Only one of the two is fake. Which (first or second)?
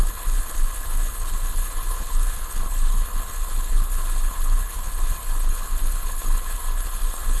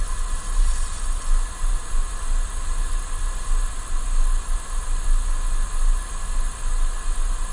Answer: first